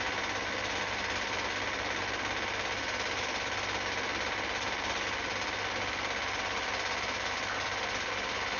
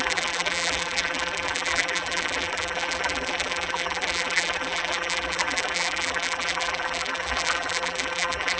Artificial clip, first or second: second